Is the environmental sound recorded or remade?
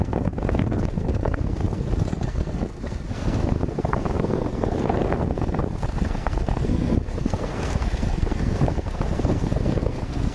remade